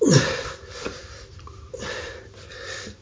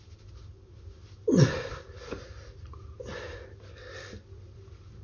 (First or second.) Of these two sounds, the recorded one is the second